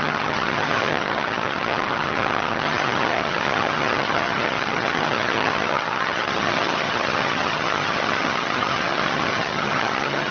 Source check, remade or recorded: remade